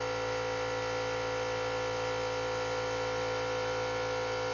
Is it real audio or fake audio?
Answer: real